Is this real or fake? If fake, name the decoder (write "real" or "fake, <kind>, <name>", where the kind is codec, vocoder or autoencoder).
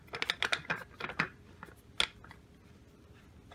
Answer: real